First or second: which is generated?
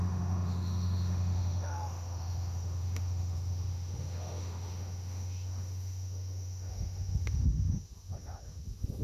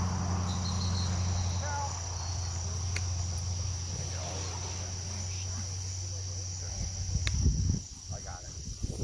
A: first